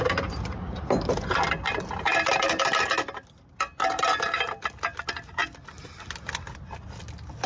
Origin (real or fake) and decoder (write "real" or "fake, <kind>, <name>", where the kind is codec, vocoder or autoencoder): real